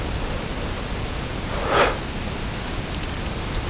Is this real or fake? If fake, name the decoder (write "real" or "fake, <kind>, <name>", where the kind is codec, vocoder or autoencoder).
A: real